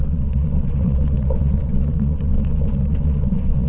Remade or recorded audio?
remade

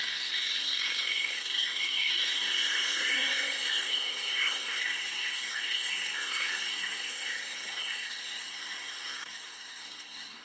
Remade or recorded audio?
remade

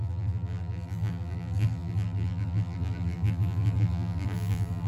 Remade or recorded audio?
remade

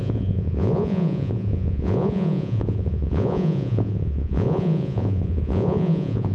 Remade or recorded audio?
remade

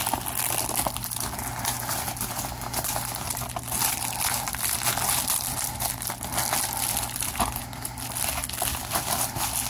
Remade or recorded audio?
recorded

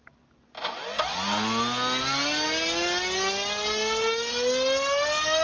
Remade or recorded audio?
recorded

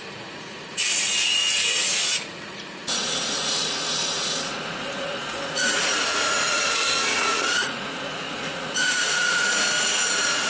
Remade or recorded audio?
remade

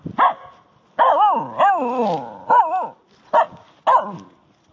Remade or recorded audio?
recorded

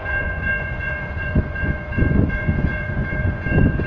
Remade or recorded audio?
remade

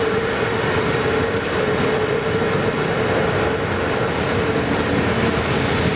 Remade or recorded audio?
recorded